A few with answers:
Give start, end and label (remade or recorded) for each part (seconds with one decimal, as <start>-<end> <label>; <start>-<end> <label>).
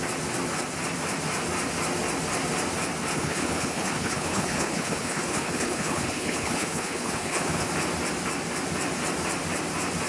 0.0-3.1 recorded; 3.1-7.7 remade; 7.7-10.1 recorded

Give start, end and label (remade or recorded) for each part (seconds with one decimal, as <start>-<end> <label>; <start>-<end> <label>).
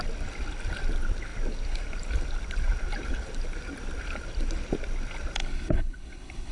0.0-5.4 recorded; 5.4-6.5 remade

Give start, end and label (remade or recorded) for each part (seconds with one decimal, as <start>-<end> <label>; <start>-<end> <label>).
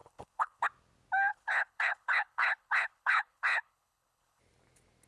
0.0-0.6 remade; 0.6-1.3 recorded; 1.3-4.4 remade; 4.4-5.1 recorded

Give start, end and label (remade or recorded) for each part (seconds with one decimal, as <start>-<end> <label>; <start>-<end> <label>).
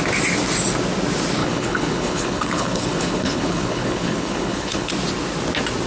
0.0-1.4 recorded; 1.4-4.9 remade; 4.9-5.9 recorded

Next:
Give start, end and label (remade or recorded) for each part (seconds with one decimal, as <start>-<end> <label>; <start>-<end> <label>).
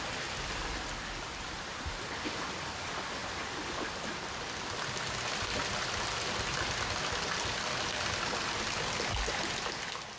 0.0-10.2 recorded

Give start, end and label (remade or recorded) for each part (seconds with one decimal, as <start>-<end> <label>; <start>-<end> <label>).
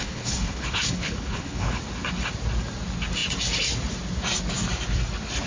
0.0-1.8 remade; 1.8-5.5 recorded